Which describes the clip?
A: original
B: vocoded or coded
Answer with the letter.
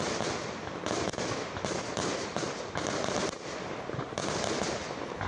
A